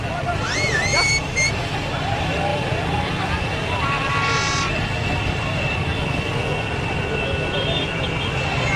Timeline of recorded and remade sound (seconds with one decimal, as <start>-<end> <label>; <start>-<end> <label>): 0.0-0.9 recorded; 0.9-1.5 remade; 1.5-8.8 recorded